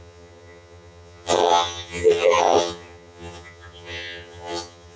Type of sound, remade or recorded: remade